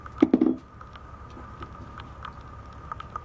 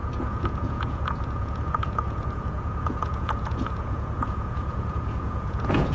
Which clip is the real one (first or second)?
first